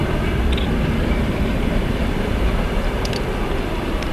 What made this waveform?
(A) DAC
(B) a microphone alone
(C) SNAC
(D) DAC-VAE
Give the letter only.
B